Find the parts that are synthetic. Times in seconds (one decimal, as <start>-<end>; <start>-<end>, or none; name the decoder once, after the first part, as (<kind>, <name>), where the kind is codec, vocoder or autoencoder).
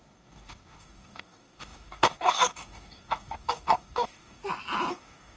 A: 0.0-4.4 (codec, DAC); 4.9-5.4